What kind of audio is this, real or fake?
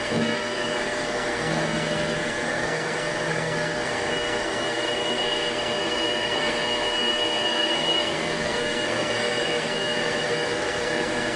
fake